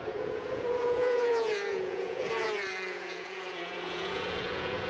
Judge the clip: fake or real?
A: fake